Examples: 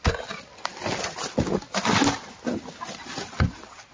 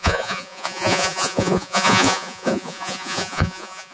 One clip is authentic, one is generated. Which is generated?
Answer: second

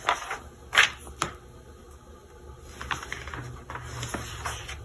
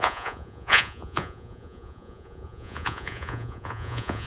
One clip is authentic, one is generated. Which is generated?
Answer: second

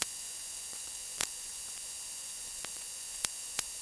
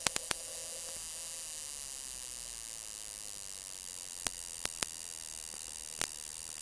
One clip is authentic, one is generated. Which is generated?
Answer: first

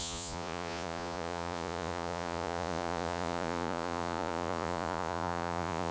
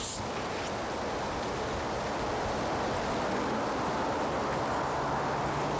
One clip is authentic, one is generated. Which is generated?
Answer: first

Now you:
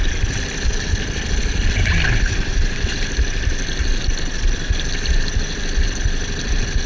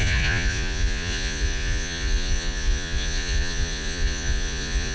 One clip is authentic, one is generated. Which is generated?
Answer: second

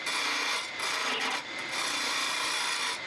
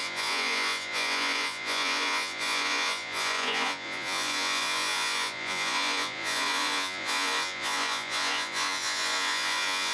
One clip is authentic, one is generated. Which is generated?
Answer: second